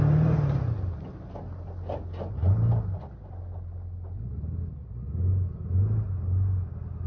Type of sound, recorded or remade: recorded